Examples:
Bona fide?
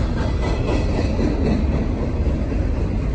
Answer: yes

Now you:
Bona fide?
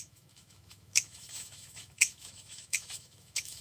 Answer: no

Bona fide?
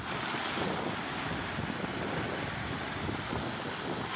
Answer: yes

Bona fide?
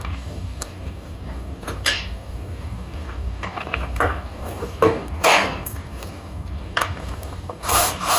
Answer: no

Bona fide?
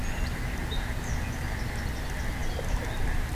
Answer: yes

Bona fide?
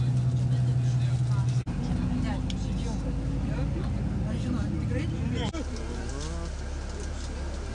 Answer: yes